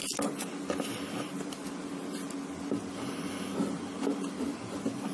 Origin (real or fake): real